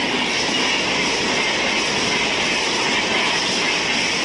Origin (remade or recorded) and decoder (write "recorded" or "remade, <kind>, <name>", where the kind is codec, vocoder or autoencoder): recorded